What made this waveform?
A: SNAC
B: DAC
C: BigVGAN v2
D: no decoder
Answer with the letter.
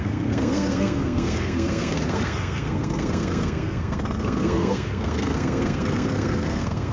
A